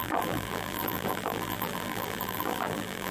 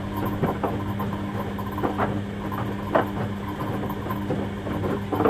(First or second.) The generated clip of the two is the first